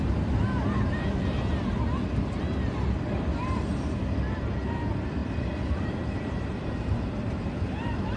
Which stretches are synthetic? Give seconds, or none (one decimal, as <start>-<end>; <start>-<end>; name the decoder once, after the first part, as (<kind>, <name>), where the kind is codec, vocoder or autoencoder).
5.2-8.2 (vocoder, BigVGAN v2)